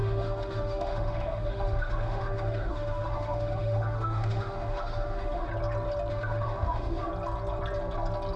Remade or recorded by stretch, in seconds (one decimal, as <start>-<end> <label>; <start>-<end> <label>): 0.0-5.5 remade; 5.5-6.1 recorded; 6.1-7.1 remade; 7.1-8.4 recorded